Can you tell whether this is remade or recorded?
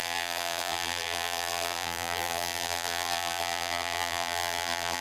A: remade